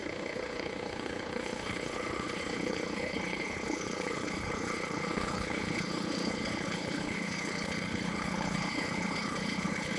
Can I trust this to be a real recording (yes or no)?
no